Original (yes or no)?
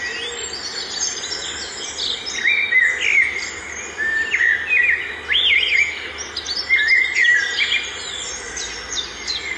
yes